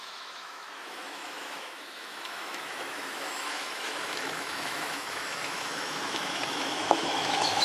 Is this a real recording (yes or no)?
no